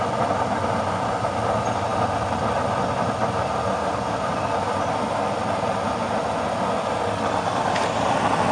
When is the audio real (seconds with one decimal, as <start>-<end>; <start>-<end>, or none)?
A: 0.0-8.5